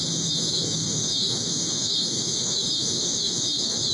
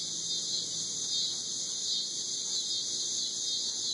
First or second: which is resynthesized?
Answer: first